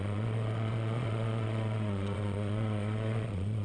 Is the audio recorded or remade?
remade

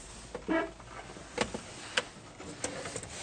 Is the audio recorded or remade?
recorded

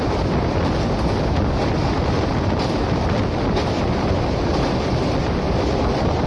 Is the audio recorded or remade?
recorded